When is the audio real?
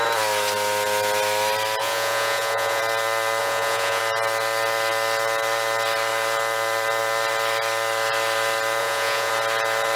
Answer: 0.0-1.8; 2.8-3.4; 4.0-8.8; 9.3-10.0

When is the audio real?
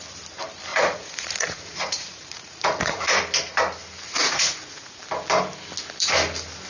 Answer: 0.0-0.7; 3.2-4.2; 5.0-6.7